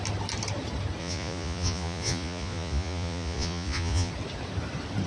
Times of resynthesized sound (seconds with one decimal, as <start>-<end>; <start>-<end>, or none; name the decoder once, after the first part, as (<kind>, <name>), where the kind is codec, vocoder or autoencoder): 1.0-4.1 (vocoder, Vocos)